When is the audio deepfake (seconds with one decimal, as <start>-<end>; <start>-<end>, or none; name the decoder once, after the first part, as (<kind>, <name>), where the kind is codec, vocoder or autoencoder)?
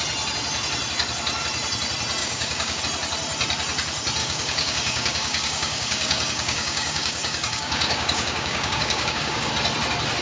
2.2-2.8 (codec, DAC); 4.2-9.5